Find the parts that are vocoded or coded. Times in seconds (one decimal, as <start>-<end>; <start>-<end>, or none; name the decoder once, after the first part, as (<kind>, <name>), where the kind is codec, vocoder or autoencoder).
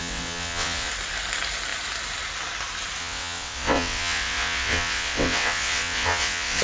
0.0-0.9 (vocoder, WaveNeXt); 3.0-6.6